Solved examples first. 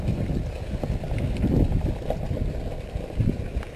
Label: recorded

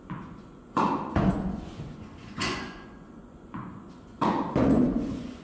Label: remade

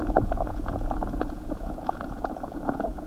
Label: remade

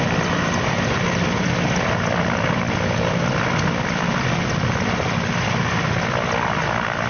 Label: recorded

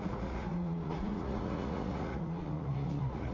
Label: remade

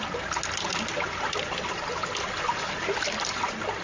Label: recorded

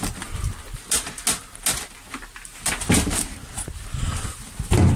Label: recorded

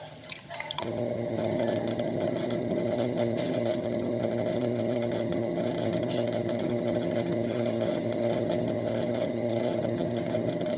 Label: remade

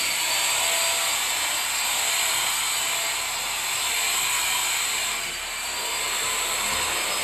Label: recorded